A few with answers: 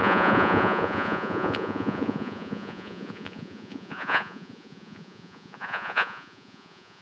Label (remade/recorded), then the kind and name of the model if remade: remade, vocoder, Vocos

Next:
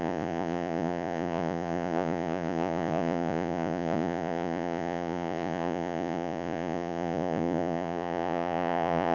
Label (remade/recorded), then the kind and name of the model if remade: remade, vocoder, Vocos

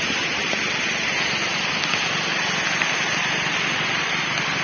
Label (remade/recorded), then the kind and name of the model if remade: recorded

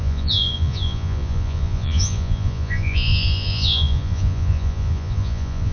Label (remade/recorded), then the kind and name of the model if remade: remade, vocoder, Vocos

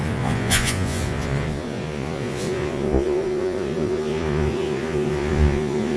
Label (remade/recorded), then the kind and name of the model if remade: remade, vocoder, Vocos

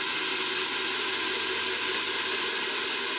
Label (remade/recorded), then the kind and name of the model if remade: recorded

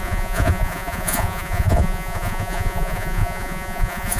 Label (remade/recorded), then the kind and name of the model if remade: remade, vocoder, Vocos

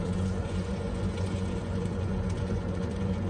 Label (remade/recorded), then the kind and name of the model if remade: remade, vocoder, Vocos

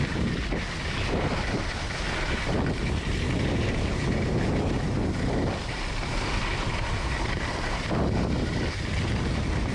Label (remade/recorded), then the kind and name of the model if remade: recorded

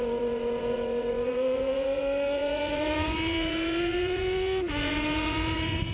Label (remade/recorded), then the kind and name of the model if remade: remade, vocoder, Vocos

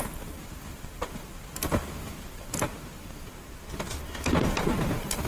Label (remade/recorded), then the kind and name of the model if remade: recorded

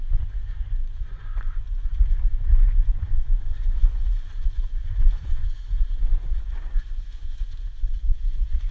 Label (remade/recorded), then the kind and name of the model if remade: remade, vocoder, Vocos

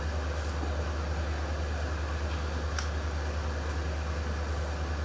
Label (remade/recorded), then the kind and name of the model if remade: recorded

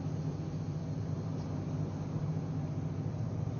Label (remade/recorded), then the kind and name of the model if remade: recorded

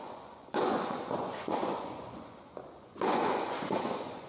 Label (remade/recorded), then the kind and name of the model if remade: remade, vocoder, Vocos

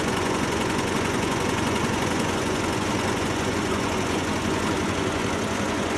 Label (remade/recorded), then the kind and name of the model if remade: remade, vocoder, Vocos